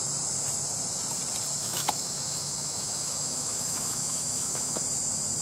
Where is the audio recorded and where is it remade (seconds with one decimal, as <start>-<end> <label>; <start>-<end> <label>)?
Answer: 0.0-1.6 recorded; 1.6-4.8 remade; 4.8-5.4 recorded